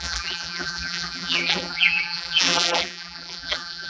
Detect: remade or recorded remade